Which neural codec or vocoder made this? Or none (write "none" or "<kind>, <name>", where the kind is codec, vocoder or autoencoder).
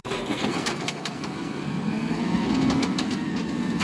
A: codec, SNAC